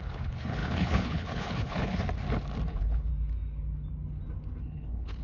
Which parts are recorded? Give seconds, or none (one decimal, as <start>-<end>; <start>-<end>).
2.0-2.7; 3.1-4.6